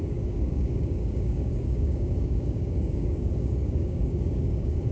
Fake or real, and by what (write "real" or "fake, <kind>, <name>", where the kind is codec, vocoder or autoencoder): fake, codec, DAC